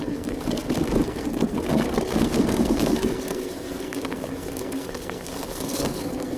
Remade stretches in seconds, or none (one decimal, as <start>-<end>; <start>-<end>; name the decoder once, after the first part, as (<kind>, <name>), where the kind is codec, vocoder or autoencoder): 0.0-6.4 (codec, SNAC)